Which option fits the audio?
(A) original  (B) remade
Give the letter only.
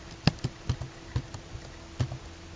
A